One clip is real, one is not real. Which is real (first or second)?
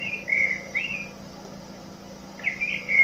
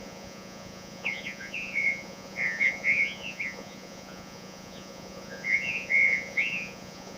first